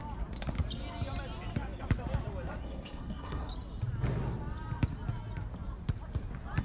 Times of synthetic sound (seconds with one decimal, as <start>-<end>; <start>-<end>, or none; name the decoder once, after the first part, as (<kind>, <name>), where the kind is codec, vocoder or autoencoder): 2.6-3.5 (codec, SNAC)